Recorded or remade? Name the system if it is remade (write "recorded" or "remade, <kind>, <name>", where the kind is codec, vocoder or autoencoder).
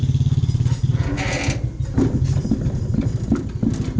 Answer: recorded